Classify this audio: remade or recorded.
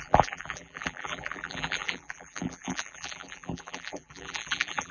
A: remade